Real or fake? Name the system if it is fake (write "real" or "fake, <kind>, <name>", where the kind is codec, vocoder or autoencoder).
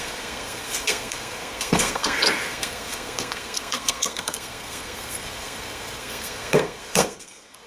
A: fake, codec, SNAC